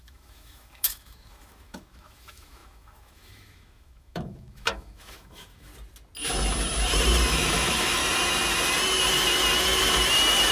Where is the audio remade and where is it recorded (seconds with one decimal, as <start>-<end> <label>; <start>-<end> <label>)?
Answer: 0.0-5.7 remade; 5.7-7.3 recorded; 7.3-8.0 remade; 8.0-10.5 recorded